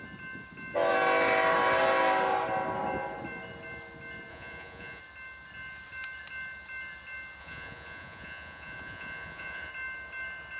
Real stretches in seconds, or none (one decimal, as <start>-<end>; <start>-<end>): 0.0-4.3; 5.0-7.4; 9.7-10.6

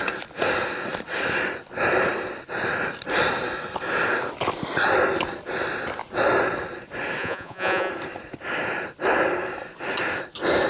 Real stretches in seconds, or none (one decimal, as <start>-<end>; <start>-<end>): 0.0-7.2; 7.9-10.7

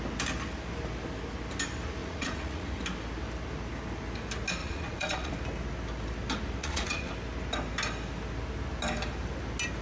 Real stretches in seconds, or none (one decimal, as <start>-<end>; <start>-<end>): 0.0-2.0; 2.7-4.6; 5.3-6.6; 7.1-9.8

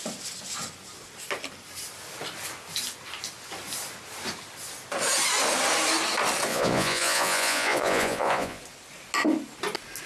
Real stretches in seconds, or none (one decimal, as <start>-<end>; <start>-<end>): 0.0-6.5; 8.6-10.1

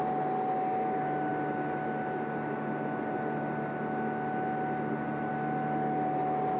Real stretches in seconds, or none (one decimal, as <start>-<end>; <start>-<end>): 0.0-6.6

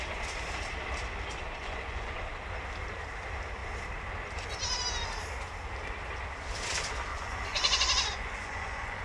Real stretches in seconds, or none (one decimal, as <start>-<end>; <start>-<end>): 0.0-1.6; 2.2-7.1

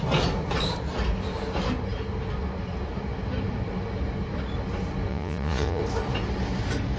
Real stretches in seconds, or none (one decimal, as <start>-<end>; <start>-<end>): 0.0-5.1; 5.8-7.0